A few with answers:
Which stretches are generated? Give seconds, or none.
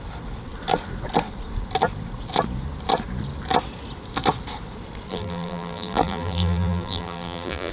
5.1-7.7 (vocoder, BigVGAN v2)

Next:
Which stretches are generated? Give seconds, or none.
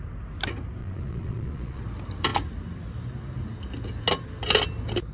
0.8-1.8 (vocoder, Vocos)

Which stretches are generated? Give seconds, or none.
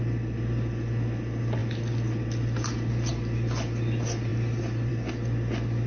none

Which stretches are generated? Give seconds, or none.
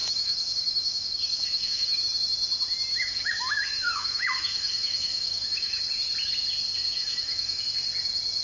0.0-2.0 (autoencoder, DAC-VAE); 2.9-5.8; 6.9-7.6